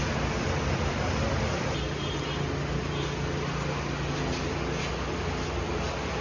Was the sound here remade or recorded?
recorded